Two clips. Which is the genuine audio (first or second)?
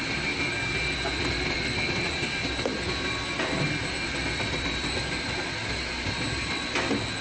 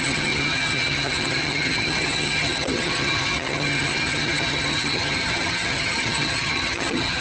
first